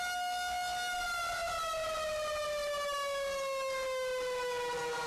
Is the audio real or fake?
real